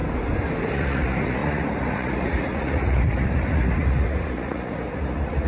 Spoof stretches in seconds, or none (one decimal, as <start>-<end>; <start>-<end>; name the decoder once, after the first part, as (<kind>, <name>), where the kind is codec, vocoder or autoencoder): 0.7-5.5 (vocoder, Vocos)